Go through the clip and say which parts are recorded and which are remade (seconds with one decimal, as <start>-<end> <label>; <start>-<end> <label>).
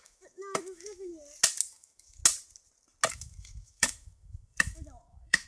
0.0-1.1 remade; 1.1-1.7 recorded; 1.7-2.2 remade; 2.2-3.1 recorded; 3.1-5.5 remade